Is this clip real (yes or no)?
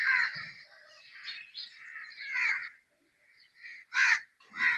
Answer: yes